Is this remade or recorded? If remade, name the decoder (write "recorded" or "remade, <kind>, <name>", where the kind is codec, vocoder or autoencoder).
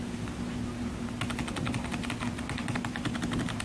recorded